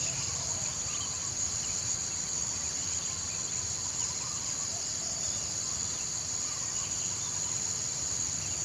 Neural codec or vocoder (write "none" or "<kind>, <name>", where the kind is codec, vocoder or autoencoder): none